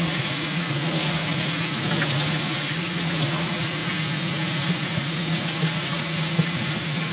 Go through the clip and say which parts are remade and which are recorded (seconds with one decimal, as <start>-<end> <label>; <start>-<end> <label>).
0.0-1.2 remade; 1.2-2.1 recorded; 2.1-3.8 remade; 3.8-4.7 recorded; 4.7-7.1 remade